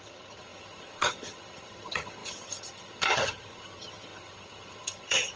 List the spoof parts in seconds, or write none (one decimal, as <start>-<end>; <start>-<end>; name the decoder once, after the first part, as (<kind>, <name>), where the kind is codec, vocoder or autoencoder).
0.0-5.4 (vocoder, HiFi-GAN)